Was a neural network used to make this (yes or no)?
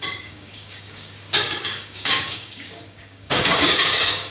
yes